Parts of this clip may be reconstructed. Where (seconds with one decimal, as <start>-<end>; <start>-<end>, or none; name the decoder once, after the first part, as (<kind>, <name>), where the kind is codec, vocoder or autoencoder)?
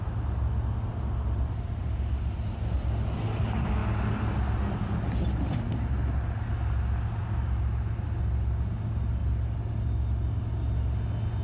none